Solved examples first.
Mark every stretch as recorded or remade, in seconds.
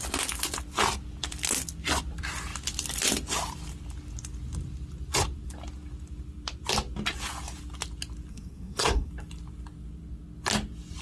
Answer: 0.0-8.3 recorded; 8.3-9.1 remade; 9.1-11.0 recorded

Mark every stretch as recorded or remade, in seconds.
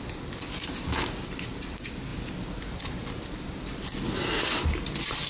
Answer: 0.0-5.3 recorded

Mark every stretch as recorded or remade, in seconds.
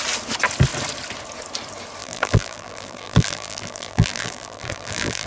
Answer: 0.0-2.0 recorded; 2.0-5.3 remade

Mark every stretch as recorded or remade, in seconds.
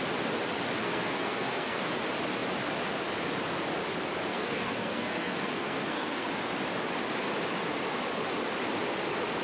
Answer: 0.0-0.8 recorded; 0.8-1.8 remade; 1.8-4.3 recorded; 4.3-6.3 remade; 6.3-9.4 recorded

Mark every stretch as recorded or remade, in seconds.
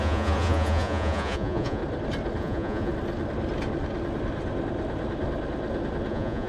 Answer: 0.0-1.8 remade; 1.8-2.4 recorded; 2.4-2.9 remade; 2.9-6.1 recorded; 6.1-6.5 remade